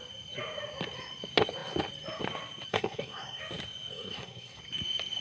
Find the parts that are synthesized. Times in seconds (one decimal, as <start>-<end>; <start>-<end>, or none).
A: 2.7-3.4; 3.9-4.6